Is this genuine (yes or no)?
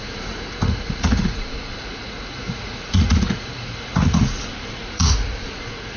no